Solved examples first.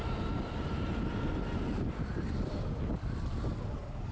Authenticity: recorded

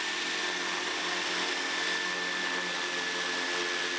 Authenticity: recorded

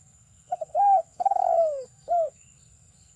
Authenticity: remade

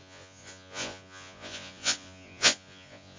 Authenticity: remade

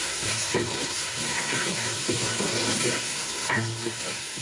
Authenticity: remade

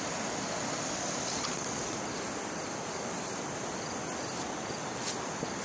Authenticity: recorded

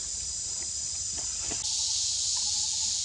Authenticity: recorded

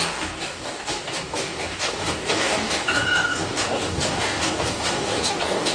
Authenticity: remade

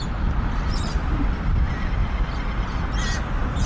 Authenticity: remade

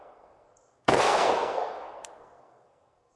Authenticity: remade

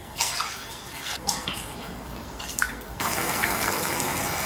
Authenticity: remade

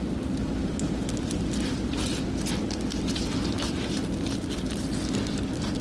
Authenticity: recorded